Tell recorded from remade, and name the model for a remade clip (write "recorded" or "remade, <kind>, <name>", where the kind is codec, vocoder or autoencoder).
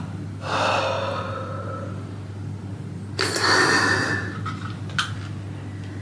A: recorded